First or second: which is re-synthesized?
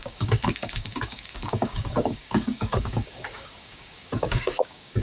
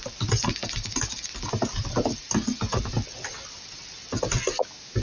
first